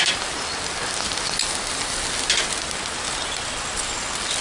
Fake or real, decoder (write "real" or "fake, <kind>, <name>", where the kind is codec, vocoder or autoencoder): real